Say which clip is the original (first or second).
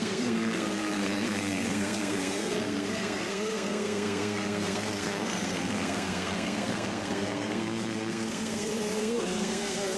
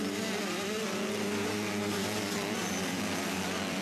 second